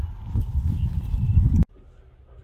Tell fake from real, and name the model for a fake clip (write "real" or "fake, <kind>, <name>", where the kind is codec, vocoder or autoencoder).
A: real